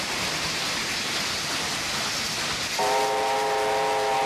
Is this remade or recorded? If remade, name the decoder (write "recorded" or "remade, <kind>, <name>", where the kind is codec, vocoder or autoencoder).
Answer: recorded